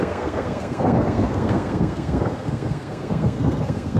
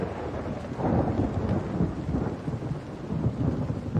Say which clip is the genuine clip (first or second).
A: second